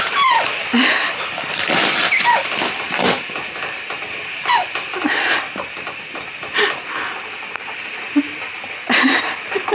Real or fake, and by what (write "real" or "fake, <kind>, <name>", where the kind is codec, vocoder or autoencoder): fake, vocoder, BigVGAN v2